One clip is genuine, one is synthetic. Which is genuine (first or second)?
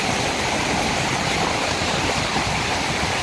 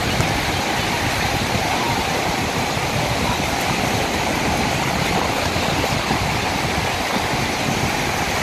second